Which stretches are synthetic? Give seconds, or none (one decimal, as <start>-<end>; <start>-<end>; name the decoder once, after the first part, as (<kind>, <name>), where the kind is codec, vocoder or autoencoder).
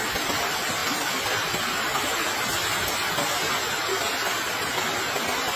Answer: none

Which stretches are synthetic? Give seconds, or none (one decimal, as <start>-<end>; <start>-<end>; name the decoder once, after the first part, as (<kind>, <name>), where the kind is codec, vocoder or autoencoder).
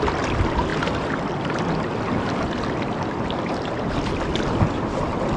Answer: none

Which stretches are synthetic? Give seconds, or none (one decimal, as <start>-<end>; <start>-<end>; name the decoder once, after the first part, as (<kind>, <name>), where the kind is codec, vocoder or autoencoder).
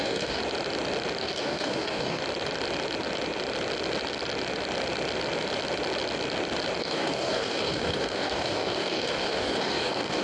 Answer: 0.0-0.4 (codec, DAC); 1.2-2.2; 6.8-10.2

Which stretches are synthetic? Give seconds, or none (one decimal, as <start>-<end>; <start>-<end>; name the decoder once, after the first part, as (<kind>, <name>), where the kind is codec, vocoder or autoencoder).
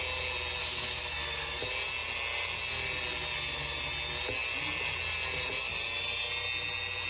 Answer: 0.6-1.6 (codec, DAC)